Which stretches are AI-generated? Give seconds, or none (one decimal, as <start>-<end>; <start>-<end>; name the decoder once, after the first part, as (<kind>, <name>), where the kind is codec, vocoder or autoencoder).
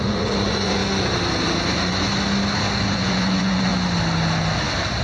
0.0-0.8 (vocoder, Vocos); 1.7-2.1; 2.8-3.7